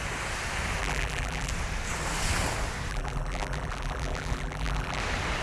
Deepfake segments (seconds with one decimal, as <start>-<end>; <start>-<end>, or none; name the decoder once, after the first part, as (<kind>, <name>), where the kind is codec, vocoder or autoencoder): 0.8-1.5 (vocoder, BigVGAN v2); 2.9-5.0